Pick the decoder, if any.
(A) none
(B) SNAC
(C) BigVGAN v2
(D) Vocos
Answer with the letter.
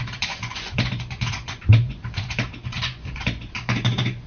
D